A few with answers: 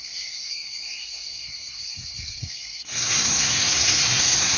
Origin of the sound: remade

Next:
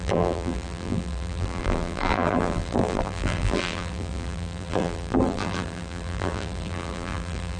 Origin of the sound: remade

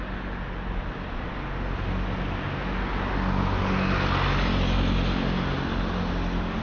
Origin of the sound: recorded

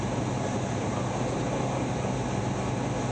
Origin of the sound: recorded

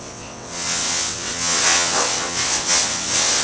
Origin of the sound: remade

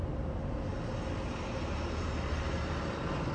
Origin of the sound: recorded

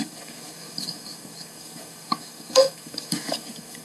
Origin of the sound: remade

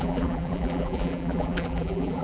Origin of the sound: remade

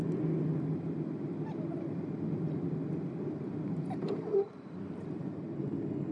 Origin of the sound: recorded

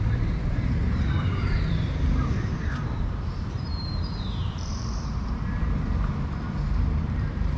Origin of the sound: remade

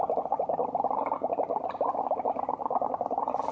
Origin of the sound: recorded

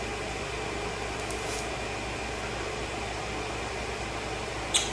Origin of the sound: recorded